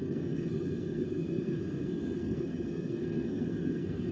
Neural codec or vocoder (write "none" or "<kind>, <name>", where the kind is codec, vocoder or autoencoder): codec, SNAC